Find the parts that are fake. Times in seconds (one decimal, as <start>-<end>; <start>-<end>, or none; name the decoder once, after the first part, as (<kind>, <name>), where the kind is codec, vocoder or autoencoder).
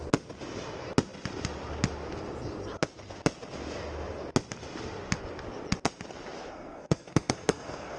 6.5-8.0 (codec, SNAC)